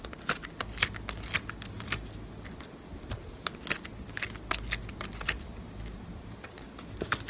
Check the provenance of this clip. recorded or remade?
recorded